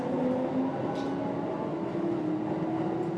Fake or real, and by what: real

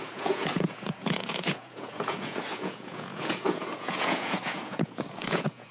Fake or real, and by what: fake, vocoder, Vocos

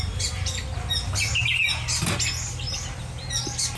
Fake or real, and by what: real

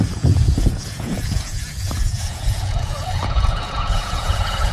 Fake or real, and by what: fake, vocoder, Vocos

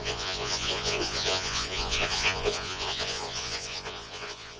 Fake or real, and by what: fake, vocoder, Vocos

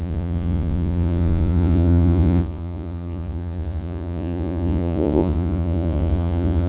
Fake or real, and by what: fake, vocoder, Vocos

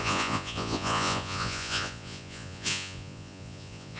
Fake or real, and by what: fake, vocoder, Vocos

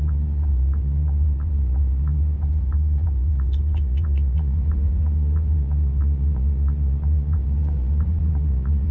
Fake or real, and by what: fake, vocoder, Vocos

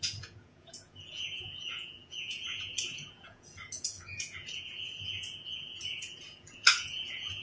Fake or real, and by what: fake, vocoder, Vocos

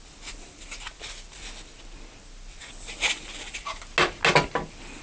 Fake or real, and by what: real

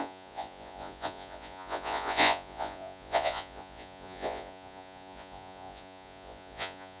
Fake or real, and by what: fake, vocoder, Vocos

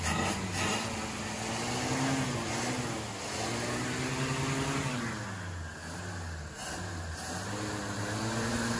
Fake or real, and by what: real